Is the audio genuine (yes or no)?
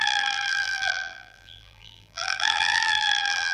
no